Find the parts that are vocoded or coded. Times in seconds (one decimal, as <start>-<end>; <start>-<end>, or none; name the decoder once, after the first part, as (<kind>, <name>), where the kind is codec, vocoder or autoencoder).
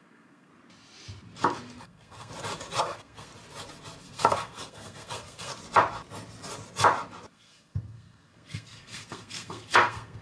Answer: 0.0-0.5 (codec, SNAC); 1.8-2.3; 2.8-3.3; 4.0-5.5; 7.3-10.2